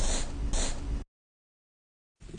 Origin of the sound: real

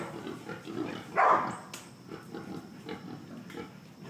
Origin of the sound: real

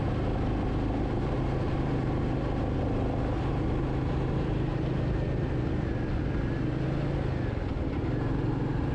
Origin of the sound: real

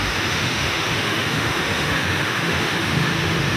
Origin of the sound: fake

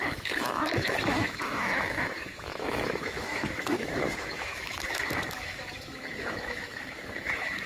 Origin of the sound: fake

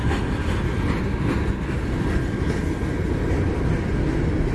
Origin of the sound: real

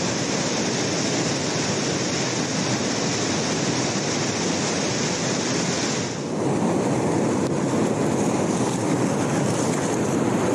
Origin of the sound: real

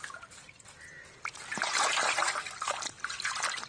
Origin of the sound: real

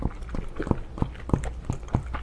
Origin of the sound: real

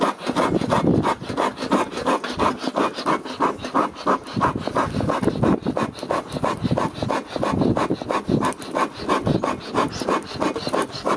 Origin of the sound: real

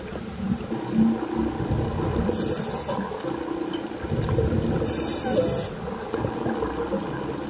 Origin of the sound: real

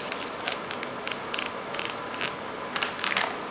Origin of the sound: real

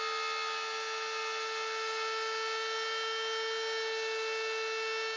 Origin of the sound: real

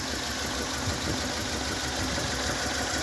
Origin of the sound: real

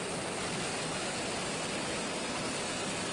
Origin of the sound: real